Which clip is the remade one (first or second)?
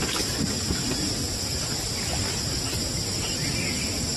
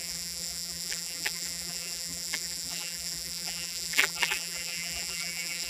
second